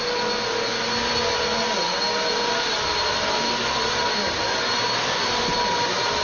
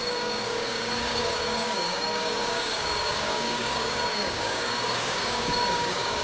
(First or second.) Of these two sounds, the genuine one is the first